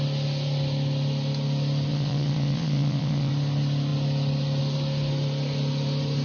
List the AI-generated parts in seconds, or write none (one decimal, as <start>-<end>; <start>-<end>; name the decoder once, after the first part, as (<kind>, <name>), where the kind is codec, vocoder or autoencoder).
1.9-3.3 (vocoder, Vocos)